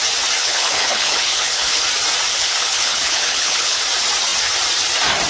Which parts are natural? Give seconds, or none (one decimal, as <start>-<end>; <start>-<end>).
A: 0.0-0.4; 1.8-2.3; 3.8-5.3